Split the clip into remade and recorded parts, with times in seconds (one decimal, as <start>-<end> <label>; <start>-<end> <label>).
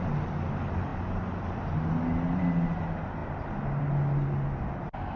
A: 0.0-5.2 recorded